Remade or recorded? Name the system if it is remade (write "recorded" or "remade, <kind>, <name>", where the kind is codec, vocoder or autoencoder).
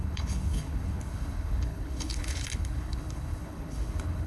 remade, codec, HILCodec